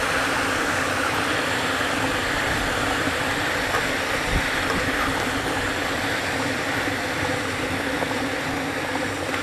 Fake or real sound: real